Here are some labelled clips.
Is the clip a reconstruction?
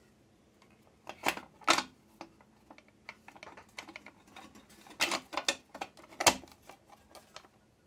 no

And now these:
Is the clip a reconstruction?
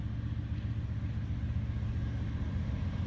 no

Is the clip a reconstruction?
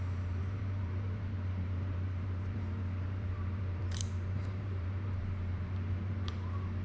yes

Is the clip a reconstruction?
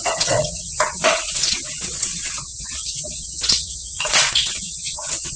yes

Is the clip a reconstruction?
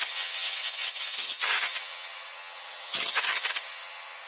yes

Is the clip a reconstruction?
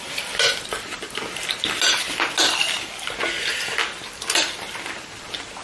no